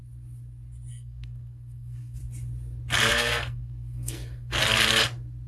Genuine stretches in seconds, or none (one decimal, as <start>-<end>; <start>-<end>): 0.0-0.9; 2.2-3.1; 4.6-5.5